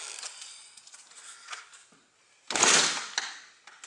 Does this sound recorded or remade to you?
recorded